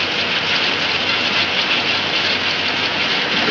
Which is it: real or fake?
real